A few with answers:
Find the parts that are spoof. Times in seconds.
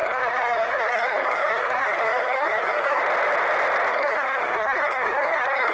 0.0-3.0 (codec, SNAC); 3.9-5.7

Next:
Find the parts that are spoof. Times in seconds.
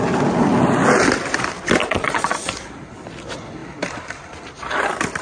1.8-2.5 (vocoder, Vocos)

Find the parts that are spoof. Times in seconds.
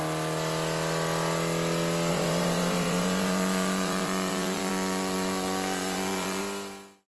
2.1-6.4 (vocoder, Vocos)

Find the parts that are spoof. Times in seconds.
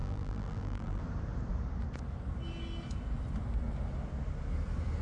0.0-1.0 (vocoder, BigVGAN v2)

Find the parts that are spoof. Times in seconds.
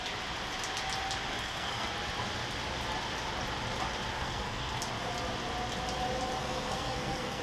1.3-1.9 (codec, SNAC); 4.1-4.8; 6.4-7.4